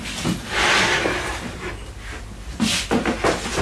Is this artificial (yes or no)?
no